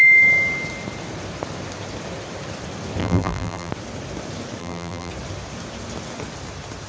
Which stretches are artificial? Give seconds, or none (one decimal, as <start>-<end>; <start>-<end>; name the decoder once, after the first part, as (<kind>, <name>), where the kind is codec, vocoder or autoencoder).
3.0-3.7 (vocoder, BigVGAN v2); 4.6-5.1